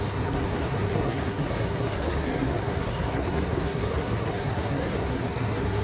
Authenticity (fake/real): fake